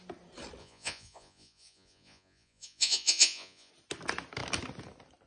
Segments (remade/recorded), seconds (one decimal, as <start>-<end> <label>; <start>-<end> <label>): 0.0-0.6 recorded; 0.6-3.7 remade; 3.7-5.3 recorded